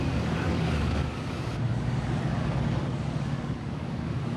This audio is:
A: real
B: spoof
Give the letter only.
B